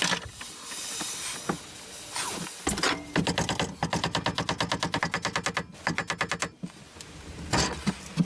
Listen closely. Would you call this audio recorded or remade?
recorded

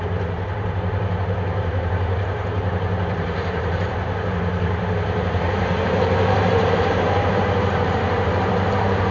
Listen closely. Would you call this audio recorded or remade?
remade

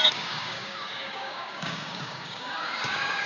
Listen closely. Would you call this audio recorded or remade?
remade